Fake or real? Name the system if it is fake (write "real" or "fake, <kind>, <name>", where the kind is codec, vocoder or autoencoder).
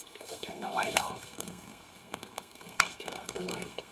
fake, codec, SNAC